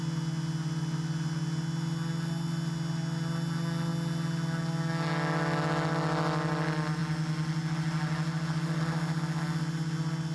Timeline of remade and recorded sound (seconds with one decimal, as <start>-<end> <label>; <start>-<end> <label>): 0.0-10.3 recorded